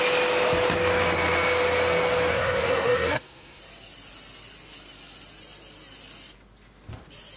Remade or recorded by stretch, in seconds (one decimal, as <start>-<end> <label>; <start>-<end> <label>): 0.0-2.3 recorded; 2.3-3.6 remade; 3.6-7.4 recorded